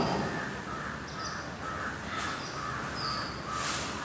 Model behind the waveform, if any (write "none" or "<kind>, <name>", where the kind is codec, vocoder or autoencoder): none